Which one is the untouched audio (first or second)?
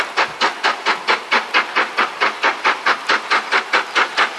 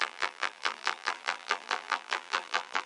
first